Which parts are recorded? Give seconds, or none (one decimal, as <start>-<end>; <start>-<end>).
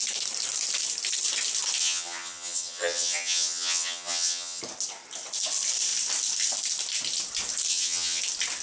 0.0-1.8; 4.6-7.7; 8.2-8.6